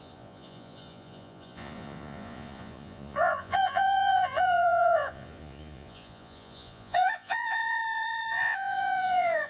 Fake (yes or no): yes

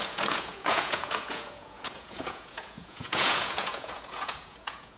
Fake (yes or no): yes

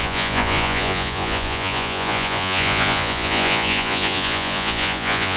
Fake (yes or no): yes